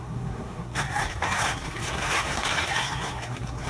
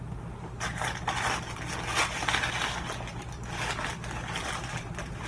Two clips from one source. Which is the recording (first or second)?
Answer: second